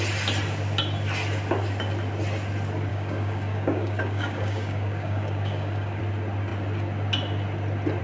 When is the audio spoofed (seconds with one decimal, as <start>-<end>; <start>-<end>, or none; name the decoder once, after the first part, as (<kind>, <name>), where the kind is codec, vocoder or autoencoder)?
2.9-6.0 (codec, DAC)